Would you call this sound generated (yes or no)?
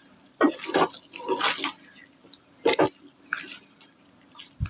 no